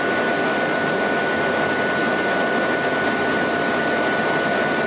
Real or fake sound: real